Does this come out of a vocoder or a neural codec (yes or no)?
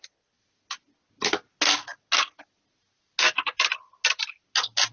no